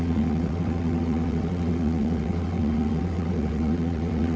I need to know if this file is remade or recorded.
remade